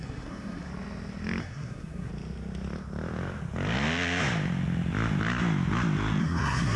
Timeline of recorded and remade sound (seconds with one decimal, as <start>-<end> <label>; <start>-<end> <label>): 0.0-0.7 remade; 0.7-1.4 recorded; 1.4-2.1 remade; 2.1-6.2 recorded; 6.2-6.8 remade